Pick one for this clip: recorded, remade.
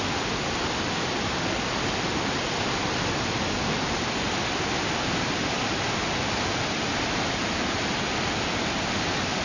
recorded